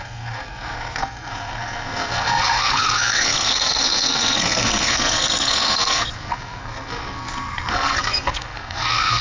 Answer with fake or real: fake